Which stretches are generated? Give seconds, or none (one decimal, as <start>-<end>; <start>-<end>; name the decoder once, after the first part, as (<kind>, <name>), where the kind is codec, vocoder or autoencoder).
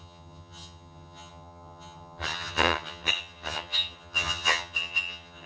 0.0-5.5 (vocoder, HiFi-GAN)